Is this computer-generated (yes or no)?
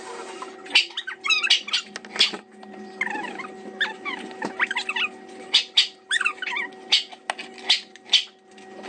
no